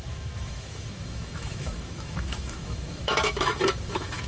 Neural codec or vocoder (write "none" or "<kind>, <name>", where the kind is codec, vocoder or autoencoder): autoencoder, DAC-VAE